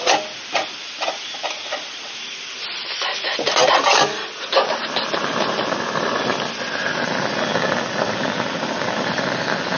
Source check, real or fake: real